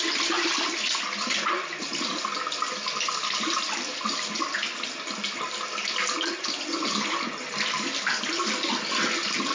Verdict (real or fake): real